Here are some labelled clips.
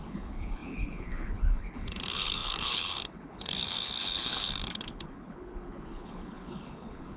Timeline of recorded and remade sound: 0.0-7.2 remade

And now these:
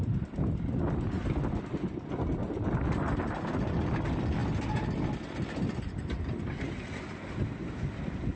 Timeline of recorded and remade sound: 0.0-8.4 recorded

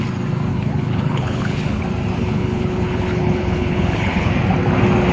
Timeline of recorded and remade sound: 0.0-0.5 recorded; 0.5-1.8 remade; 1.8-2.2 recorded; 2.2-4.3 remade; 4.3-5.1 recorded